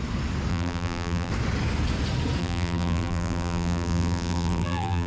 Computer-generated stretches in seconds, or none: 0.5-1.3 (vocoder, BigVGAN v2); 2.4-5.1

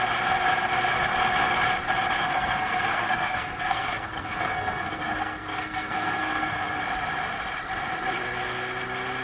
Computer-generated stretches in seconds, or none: 2.2-6.8 (codec, SNAC)

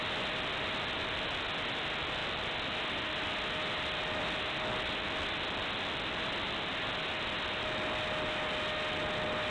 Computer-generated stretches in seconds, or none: none